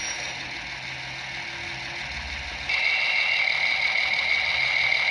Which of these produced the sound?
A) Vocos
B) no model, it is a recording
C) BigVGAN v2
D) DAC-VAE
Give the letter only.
B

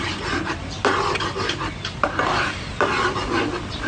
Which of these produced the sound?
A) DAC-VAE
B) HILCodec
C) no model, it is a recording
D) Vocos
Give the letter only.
C